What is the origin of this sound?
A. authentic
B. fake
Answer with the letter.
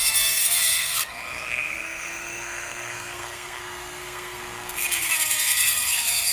B